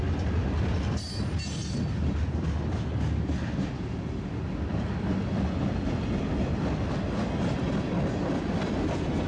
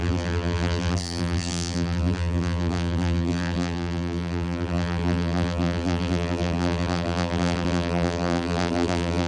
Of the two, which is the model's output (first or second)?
second